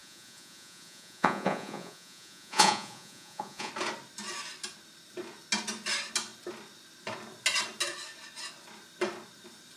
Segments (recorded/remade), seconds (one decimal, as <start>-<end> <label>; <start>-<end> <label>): 0.0-3.7 remade; 3.7-9.8 recorded